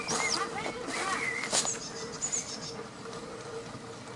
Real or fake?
real